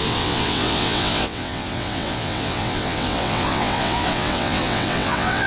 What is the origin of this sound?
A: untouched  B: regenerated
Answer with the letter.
B